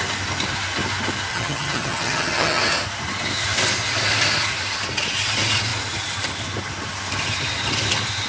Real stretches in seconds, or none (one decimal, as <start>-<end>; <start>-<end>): 0.0-1.3; 2.6-8.3